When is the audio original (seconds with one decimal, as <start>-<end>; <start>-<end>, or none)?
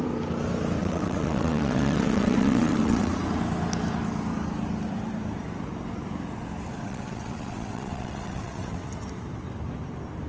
0.0-0.8; 3.1-6.8; 8.9-10.3